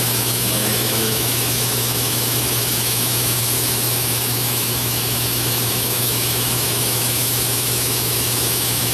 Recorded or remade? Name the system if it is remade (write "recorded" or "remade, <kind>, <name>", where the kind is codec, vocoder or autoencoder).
remade, autoencoder, DAC-VAE